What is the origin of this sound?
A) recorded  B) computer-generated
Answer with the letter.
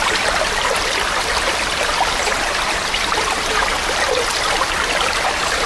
B